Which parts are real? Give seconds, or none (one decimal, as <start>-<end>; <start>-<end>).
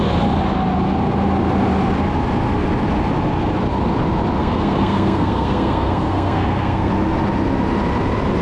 0.0-4.4; 6.9-8.4